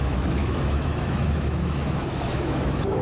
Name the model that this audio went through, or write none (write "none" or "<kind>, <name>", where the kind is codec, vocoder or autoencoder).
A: autoencoder, DAC-VAE